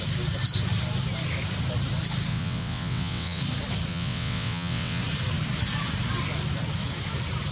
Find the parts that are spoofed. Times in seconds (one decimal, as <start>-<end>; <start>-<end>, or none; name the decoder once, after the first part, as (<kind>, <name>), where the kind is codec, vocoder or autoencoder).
2.3-3.4 (vocoder, WaveNeXt); 3.9-5.0